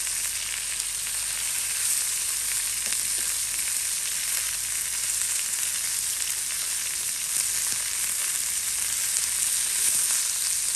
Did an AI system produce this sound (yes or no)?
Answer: no